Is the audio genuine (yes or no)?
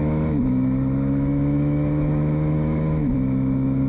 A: no